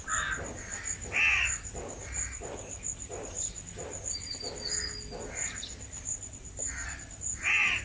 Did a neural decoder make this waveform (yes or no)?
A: no